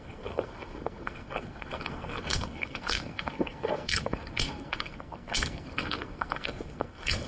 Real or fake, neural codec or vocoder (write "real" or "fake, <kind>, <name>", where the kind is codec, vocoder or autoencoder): fake, codec, SNAC